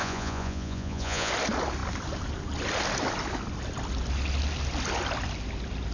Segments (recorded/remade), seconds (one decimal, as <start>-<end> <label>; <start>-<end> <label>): 0.0-1.3 remade; 1.3-5.9 recorded

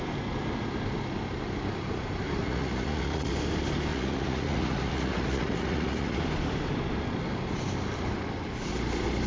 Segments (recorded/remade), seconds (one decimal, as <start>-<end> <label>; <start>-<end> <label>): 0.0-2.4 recorded; 2.4-3.3 remade; 3.3-3.9 recorded; 3.9-6.2 remade; 6.2-9.3 recorded

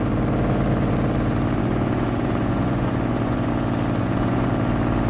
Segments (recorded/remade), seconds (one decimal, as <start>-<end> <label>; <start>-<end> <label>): 0.0-1.6 recorded; 1.6-3.5 remade; 3.5-4.0 recorded; 4.0-4.5 remade; 4.5-5.1 recorded

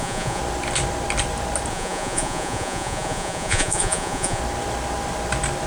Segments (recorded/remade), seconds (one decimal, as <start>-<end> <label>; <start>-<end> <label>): 0.0-0.4 remade; 0.4-1.7 recorded; 1.7-4.4 remade; 4.4-5.7 recorded

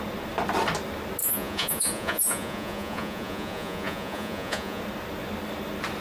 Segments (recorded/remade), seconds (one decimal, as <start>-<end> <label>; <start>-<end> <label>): 0.0-1.2 recorded; 1.2-4.8 remade; 4.8-6.0 recorded

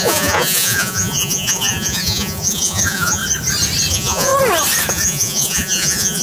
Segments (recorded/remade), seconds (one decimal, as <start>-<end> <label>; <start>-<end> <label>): 0.0-3.2 remade; 3.2-3.9 recorded; 3.9-4.3 remade; 4.3-4.9 recorded; 4.9-6.2 remade